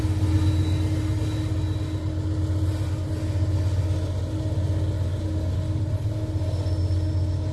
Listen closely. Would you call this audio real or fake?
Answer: real